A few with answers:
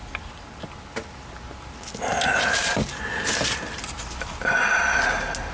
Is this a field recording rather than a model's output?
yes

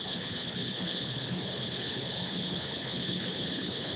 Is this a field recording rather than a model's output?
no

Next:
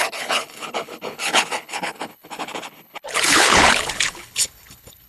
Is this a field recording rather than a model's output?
no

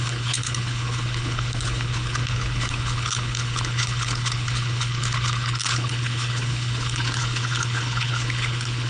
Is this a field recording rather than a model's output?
no